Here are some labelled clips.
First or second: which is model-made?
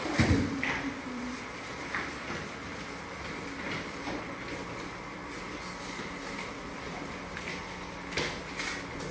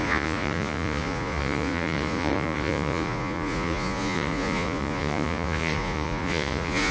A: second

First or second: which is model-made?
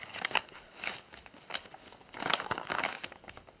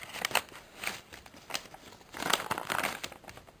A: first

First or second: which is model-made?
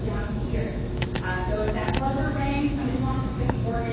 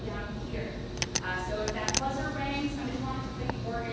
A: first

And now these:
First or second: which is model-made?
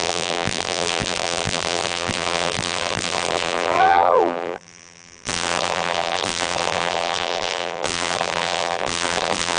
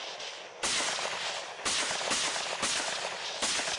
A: first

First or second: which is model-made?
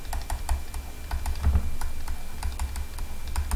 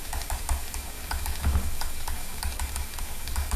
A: second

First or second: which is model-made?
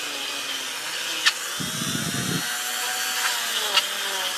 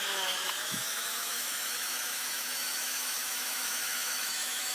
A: second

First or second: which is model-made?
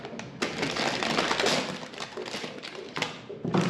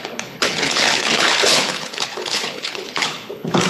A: second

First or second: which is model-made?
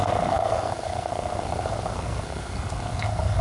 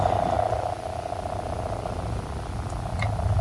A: first